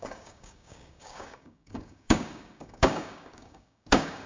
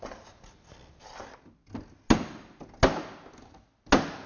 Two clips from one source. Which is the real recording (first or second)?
second